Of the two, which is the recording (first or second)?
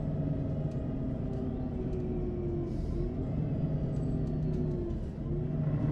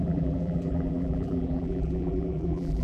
first